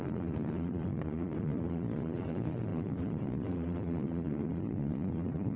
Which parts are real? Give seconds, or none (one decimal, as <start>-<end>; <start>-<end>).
none